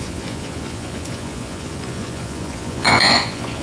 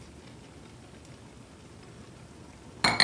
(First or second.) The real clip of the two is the second